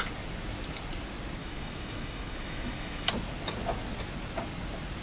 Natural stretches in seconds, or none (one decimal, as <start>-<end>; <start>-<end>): 0.0-1.4; 3.1-5.0